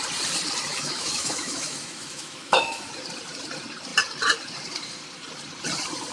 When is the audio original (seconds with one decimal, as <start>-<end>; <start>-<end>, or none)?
0.0-0.7; 2.9-6.1